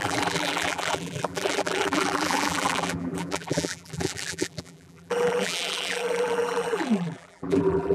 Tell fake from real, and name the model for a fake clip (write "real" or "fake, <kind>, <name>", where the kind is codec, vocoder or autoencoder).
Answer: fake, vocoder, BigVGAN v2